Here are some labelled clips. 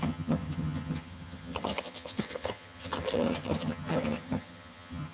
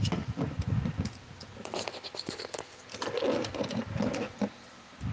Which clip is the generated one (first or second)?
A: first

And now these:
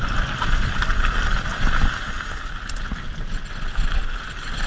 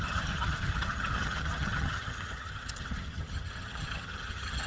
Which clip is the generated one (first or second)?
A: second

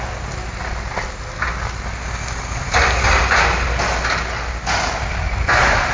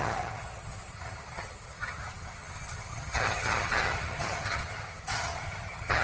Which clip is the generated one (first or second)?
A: second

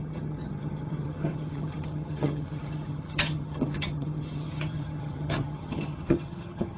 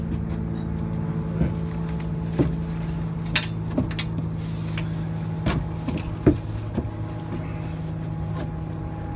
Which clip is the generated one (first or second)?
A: first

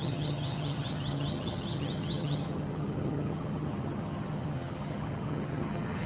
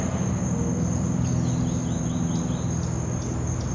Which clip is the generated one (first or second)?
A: first